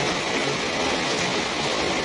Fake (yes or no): no